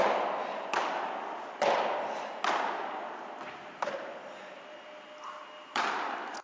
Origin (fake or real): real